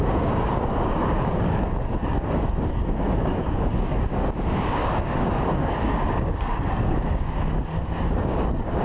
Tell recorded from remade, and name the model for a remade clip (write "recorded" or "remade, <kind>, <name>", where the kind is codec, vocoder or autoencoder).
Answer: remade, codec, DAC